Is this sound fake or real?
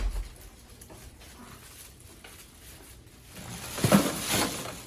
real